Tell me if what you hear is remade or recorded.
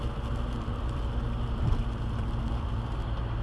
remade